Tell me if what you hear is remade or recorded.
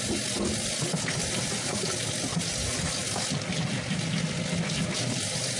recorded